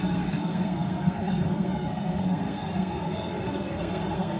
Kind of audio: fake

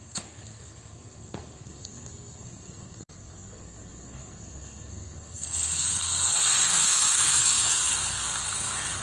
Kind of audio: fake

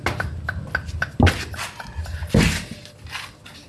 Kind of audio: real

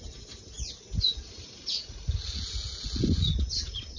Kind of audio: real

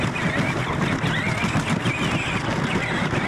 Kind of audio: real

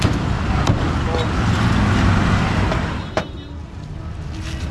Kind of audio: real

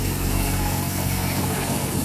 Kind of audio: fake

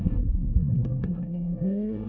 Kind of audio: fake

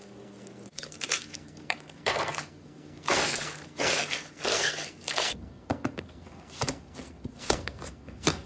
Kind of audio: fake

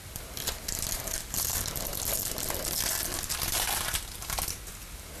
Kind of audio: real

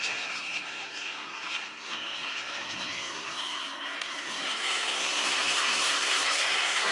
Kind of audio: fake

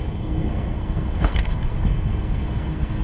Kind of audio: fake